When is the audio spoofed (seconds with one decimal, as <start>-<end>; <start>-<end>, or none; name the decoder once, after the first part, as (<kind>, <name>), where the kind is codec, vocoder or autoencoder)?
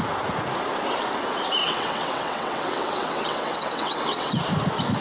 1.6-4.4 (vocoder, WaveNeXt)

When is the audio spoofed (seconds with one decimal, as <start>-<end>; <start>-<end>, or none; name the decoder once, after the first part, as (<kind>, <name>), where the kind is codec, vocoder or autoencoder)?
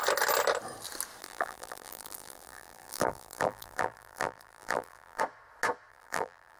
1.2-5.2 (vocoder, BigVGAN v2); 5.9-6.6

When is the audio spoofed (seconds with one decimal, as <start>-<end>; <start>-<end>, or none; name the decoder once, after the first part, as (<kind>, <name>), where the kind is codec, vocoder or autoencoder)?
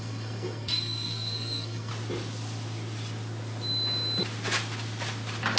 0.0-1.9 (codec, SNAC)